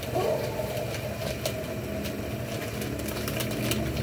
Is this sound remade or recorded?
recorded